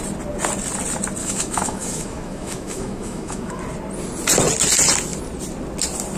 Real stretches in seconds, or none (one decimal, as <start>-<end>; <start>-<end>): 0.0-1.2; 3.6-6.2